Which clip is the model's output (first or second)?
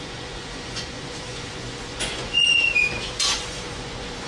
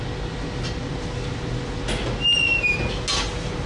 first